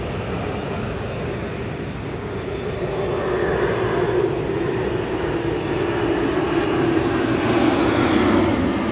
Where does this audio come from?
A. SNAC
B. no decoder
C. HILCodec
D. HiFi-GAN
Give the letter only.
B